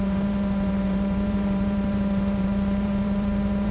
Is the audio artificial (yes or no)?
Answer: yes